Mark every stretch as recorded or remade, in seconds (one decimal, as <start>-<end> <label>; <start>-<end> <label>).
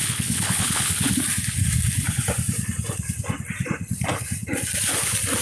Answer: 0.0-1.2 remade; 1.2-5.4 recorded